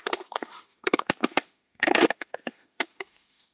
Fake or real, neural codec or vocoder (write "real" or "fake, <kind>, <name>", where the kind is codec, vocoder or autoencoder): fake, autoencoder, DAC-VAE